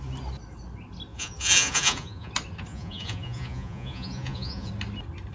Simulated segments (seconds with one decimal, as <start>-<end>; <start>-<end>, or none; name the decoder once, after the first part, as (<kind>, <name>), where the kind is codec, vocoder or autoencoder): 1.1-2.3 (vocoder, Vocos); 2.7-4.7